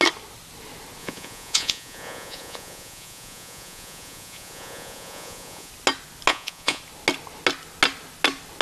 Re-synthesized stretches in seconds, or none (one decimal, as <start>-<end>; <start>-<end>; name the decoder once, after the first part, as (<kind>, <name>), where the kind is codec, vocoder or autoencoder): 1.0-5.7 (vocoder, Vocos); 6.3-6.8